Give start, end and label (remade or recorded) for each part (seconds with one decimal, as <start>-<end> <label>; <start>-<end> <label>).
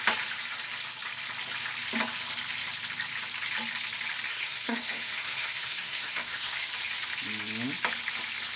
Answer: 0.0-4.3 recorded; 4.3-6.7 remade; 6.7-8.6 recorded